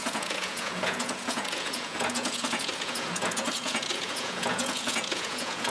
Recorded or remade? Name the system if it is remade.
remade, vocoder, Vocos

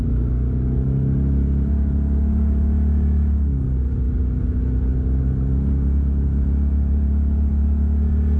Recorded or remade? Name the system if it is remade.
recorded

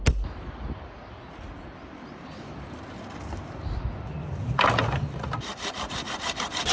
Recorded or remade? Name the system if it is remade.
recorded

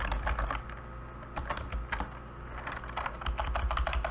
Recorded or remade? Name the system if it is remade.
recorded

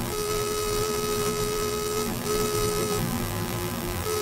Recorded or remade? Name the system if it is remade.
remade, vocoder, BigVGAN v2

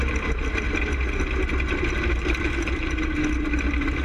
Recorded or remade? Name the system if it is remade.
recorded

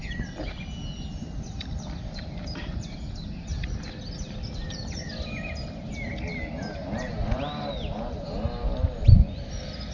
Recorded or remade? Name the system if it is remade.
recorded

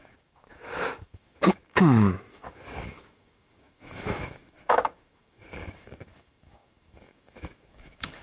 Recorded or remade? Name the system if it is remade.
remade, autoencoder, DAC-VAE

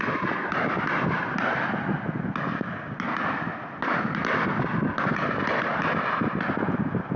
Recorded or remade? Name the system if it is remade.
recorded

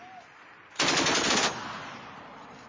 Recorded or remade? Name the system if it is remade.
recorded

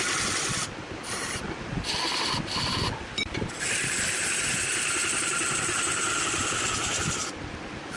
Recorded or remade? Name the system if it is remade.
recorded